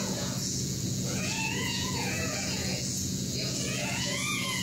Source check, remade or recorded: remade